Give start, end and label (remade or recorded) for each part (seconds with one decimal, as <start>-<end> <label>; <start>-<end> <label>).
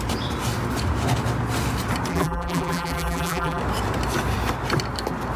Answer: 0.0-2.1 recorded; 2.1-3.6 remade; 3.6-5.4 recorded